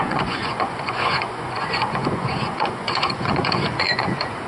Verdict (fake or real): fake